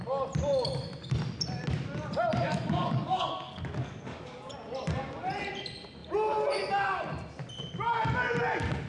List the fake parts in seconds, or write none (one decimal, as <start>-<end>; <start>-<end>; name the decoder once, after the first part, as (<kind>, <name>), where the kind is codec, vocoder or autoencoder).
2.5-4.5 (codec, DAC)